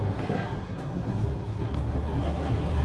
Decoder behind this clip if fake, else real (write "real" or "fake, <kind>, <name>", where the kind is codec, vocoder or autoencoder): fake, codec, SNAC